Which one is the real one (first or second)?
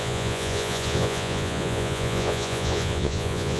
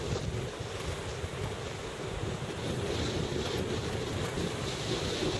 second